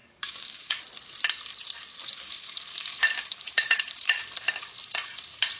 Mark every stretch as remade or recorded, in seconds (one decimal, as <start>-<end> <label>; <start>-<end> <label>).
0.0-0.8 remade; 0.8-2.0 recorded; 2.0-4.2 remade; 4.2-5.6 recorded